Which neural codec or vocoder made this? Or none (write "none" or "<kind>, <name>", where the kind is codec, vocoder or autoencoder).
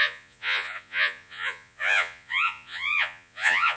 vocoder, Vocos